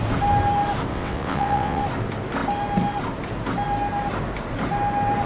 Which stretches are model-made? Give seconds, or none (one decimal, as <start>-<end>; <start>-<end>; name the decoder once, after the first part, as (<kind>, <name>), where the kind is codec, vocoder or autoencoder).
0.9-1.8 (vocoder, WaveNeXt)